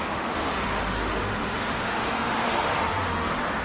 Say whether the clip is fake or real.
fake